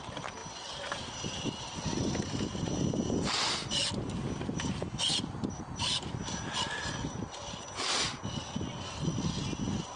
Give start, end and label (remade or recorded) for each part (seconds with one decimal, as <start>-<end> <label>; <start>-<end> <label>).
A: 0.0-10.0 recorded